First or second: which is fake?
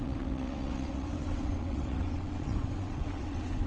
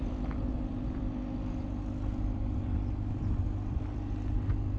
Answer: first